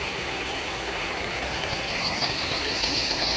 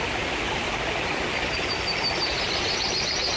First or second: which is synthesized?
first